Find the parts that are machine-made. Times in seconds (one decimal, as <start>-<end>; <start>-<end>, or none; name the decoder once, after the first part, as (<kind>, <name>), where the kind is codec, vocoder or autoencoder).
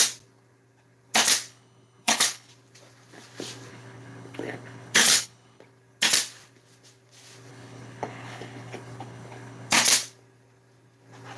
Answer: 1.5-2.5 (codec, HILCodec); 3.7-5.6; 7.5-9.7